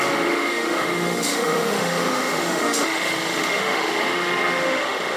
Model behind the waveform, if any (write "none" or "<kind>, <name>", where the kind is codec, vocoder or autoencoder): autoencoder, DAC-VAE